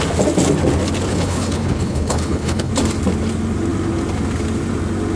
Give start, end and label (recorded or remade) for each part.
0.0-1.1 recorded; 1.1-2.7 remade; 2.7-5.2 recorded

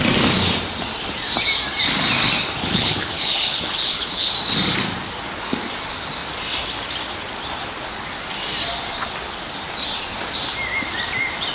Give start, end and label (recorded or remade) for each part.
0.0-2.6 recorded; 2.6-4.3 remade; 4.3-11.5 recorded

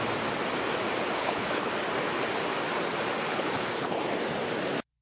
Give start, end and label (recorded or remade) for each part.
0.0-1.2 recorded; 1.2-1.7 remade; 1.7-3.3 recorded; 3.3-4.0 remade; 4.0-5.0 recorded

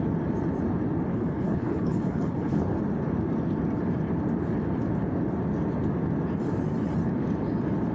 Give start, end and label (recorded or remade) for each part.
0.0-1.1 recorded; 1.1-2.8 remade; 2.8-7.9 recorded

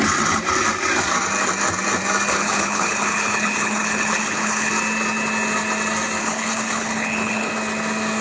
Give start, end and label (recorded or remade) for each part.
0.0-2.3 recorded; 2.3-4.7 remade; 4.7-6.2 recorded; 6.2-7.5 remade; 7.5-8.2 recorded